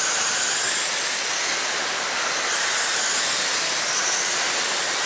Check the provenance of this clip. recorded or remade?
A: recorded